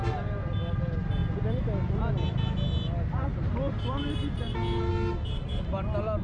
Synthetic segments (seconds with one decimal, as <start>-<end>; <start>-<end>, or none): none